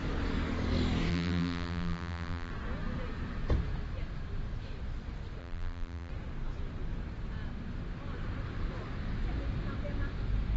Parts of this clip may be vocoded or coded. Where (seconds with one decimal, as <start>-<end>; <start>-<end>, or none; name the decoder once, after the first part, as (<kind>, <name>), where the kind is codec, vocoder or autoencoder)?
1.1-2.5 (vocoder, BigVGAN v2); 5.4-6.1